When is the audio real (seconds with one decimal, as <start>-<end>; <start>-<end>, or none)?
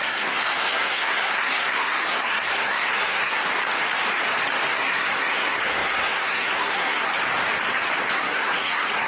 3.4-4.7; 7.1-8.1